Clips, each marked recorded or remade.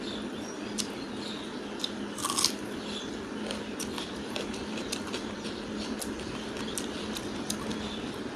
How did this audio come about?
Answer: recorded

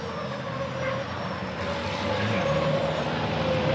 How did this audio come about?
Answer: recorded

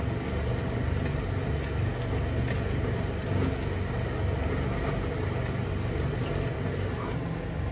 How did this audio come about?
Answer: recorded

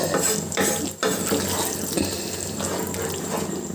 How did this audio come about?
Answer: recorded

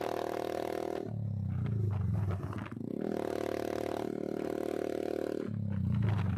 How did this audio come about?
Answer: recorded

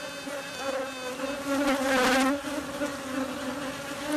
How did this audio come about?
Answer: recorded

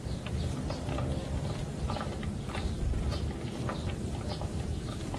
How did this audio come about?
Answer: remade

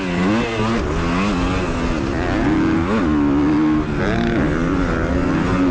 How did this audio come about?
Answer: recorded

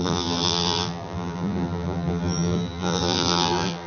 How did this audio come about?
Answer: remade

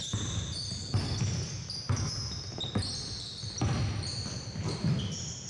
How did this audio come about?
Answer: recorded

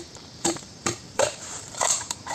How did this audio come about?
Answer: remade